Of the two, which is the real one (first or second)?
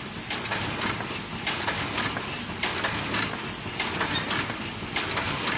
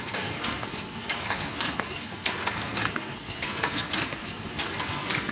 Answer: first